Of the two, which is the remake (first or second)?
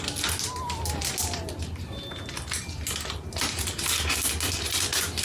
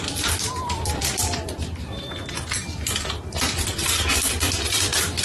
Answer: second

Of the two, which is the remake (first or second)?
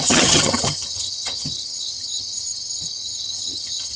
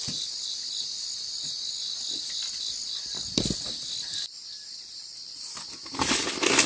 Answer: first